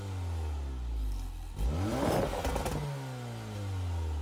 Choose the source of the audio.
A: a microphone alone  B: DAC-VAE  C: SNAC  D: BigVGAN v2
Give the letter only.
A